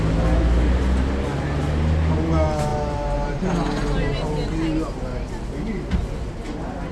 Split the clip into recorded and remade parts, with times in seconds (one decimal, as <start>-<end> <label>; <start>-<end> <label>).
0.0-6.9 recorded